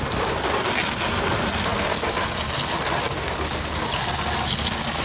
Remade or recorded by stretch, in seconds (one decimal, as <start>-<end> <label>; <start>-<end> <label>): 0.0-5.0 recorded